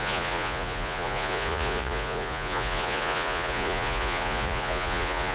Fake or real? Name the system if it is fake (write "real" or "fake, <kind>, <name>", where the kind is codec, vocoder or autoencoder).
fake, vocoder, Vocos